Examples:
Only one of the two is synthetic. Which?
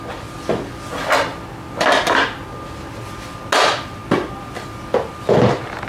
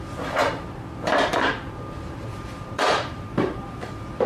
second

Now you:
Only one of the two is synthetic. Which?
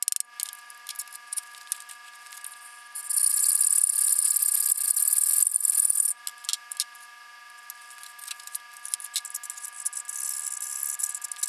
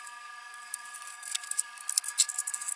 second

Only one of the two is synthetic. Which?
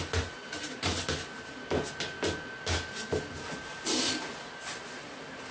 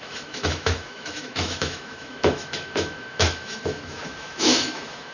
second